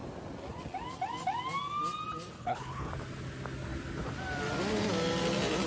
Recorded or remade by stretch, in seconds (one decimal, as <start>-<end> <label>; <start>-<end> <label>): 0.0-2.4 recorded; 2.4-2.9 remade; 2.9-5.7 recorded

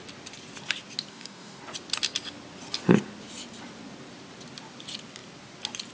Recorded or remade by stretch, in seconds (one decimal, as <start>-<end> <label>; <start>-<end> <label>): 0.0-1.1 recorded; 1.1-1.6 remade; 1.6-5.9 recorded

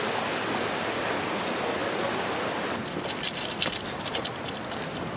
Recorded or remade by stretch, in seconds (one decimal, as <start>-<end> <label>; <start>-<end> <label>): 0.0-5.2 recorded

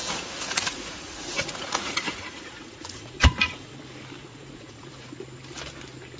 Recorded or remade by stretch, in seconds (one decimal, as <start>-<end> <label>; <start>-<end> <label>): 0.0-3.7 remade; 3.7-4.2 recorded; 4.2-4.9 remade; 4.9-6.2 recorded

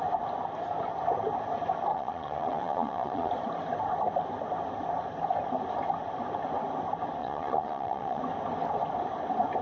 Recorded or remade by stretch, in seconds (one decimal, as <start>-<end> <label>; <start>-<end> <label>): 0.0-1.9 recorded; 1.9-3.3 remade; 3.3-7.2 recorded; 7.2-8.2 remade; 8.2-9.6 recorded